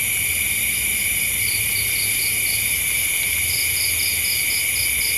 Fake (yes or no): no